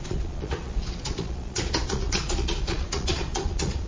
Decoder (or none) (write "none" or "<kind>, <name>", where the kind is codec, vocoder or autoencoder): vocoder, Vocos